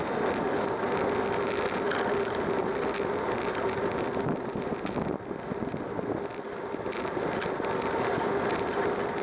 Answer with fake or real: real